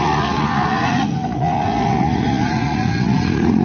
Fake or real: fake